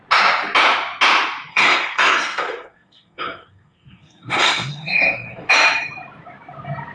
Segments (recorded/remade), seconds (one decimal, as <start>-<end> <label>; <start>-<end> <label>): 0.0-1.5 recorded; 1.5-5.5 remade; 5.5-6.9 recorded